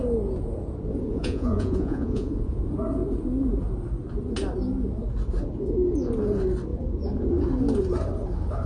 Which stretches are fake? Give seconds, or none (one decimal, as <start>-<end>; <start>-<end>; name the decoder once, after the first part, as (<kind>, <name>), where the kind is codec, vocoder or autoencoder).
1.1-2.6 (vocoder, Vocos)